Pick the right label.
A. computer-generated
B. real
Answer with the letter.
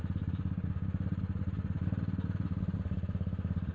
B